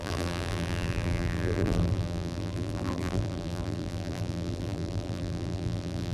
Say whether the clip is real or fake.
fake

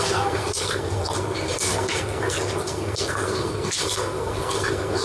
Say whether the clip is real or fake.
fake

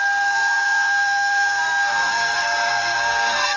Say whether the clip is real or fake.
fake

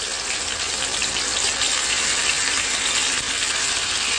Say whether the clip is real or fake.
real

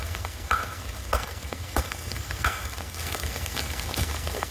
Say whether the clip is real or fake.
fake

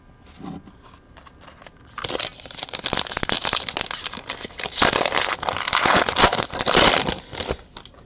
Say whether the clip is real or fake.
real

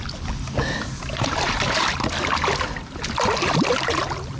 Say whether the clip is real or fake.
real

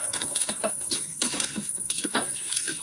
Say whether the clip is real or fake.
fake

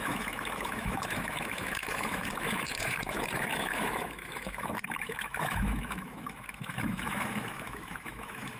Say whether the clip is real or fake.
fake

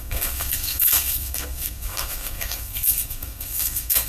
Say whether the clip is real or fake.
fake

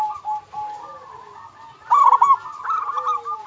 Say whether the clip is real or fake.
real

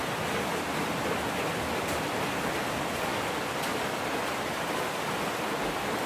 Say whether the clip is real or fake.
real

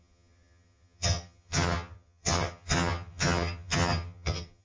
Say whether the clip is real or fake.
fake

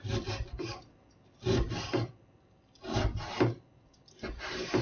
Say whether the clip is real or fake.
real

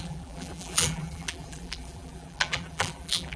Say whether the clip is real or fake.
fake